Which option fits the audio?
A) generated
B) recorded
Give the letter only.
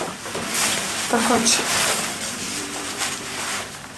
A